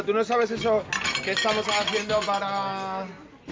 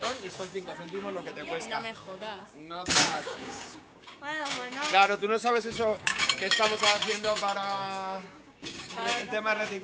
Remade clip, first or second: second